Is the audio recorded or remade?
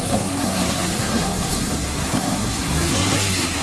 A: remade